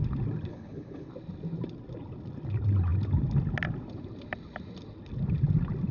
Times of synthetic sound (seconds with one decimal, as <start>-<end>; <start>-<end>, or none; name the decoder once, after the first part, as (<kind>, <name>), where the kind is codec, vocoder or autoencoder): 0.5-1.1 (codec, HILCodec)